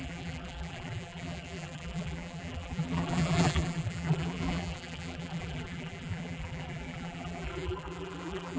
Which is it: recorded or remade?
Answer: remade